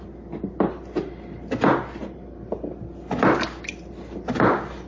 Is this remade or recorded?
recorded